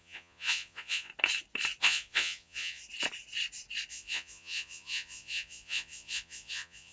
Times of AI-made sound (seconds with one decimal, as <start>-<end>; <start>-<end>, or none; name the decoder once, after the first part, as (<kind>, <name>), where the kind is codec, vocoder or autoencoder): 0.0-1.1 (vocoder, Vocos); 1.8-2.8; 3.9-6.9